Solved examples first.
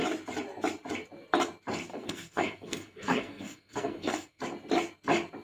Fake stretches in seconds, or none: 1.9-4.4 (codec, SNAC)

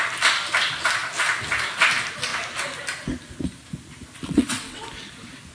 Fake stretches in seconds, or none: 4.2-4.8 (vocoder, WaveNeXt)